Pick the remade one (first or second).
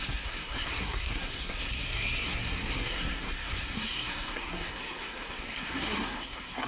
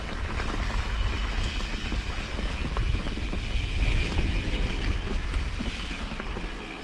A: first